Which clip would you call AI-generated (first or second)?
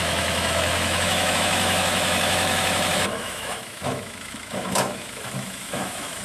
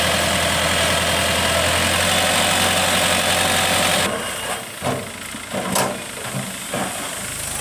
first